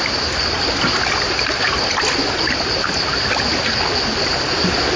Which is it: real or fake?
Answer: real